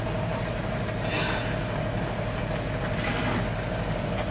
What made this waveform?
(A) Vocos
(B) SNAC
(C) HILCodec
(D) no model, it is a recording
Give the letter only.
D